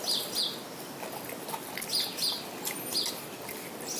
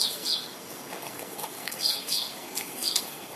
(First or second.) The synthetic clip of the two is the second